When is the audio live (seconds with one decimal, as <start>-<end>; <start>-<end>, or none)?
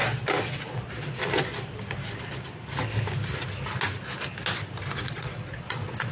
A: 0.0-0.6; 1.2-4.9